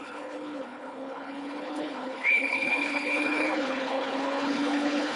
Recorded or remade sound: remade